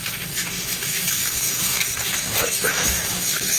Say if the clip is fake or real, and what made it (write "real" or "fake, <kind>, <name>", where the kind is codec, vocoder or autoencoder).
fake, codec, DAC